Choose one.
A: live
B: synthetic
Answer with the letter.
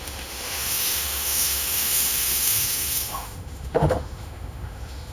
B